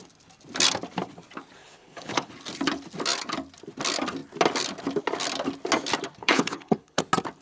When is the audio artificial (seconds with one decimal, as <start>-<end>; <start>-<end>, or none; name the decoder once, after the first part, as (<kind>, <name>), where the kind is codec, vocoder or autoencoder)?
1.6-2.3 (codec, HILCodec); 6.2-7.0